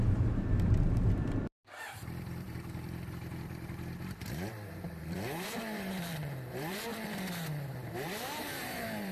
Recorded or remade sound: remade